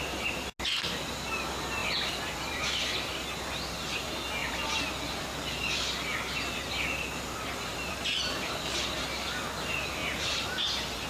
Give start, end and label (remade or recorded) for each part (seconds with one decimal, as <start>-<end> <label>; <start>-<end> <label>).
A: 0.0-1.8 recorded; 1.8-3.1 remade; 3.1-4.4 recorded; 4.4-5.1 remade; 5.1-7.7 recorded; 7.7-8.5 remade; 8.5-10.0 recorded; 10.0-11.1 remade